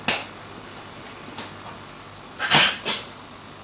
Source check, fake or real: real